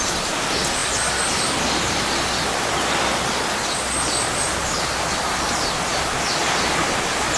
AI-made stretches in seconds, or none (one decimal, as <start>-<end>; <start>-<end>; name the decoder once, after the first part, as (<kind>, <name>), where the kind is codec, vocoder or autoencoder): none